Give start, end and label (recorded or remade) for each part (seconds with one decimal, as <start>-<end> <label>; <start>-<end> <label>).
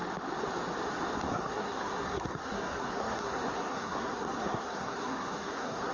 0.0-1.3 recorded; 1.3-5.9 remade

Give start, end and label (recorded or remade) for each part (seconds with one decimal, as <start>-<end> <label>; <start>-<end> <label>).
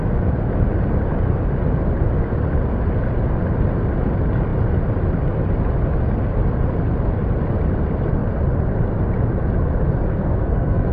0.0-10.1 recorded; 10.1-10.9 remade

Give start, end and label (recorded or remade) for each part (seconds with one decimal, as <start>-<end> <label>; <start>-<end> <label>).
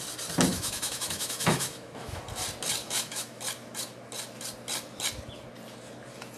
0.0-0.5 recorded; 0.5-2.2 remade; 2.2-2.8 recorded; 2.8-3.4 remade; 3.4-6.4 recorded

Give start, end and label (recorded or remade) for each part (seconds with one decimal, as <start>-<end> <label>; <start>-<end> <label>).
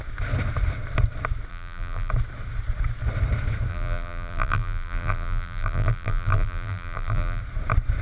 0.0-1.5 recorded; 1.5-2.1 remade; 2.1-3.7 recorded; 3.7-7.4 remade; 7.4-8.0 recorded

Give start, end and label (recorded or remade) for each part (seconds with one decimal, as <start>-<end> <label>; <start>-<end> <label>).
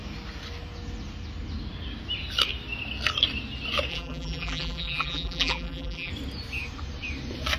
0.0-3.9 recorded; 3.9-6.1 remade; 6.1-7.6 recorded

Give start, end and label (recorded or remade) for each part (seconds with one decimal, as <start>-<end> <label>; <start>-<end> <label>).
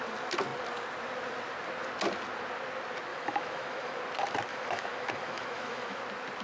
0.0-3.1 recorded; 3.1-4.0 remade; 4.0-4.5 recorded; 4.5-6.0 remade; 6.0-6.4 recorded